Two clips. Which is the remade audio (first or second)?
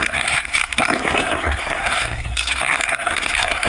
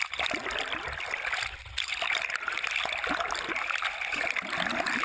first